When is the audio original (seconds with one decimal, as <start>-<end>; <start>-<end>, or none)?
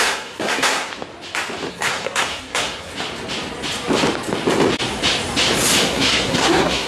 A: 0.9-1.7; 2.9-5.8